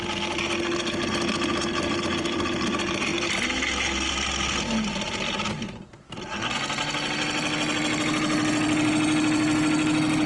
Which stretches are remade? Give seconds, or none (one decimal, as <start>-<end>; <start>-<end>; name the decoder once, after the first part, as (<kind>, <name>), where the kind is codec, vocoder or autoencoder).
none

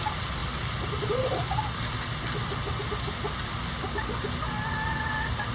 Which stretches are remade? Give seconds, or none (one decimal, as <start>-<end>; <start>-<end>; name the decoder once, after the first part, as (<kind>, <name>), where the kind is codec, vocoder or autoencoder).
none

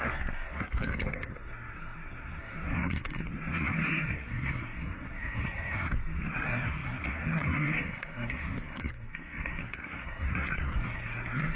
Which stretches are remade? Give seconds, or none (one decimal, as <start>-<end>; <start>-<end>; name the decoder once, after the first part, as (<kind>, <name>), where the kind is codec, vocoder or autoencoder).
0.0-11.6 (codec, SNAC)

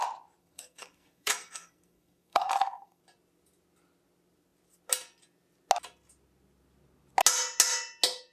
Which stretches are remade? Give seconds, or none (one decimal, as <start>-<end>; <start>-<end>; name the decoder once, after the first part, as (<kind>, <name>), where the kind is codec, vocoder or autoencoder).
0.4-3.0 (codec, SNAC)

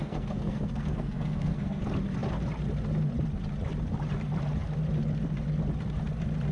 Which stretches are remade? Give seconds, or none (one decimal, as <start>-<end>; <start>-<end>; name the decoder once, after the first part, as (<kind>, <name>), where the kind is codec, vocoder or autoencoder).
0.0-1.8 (codec, SNAC)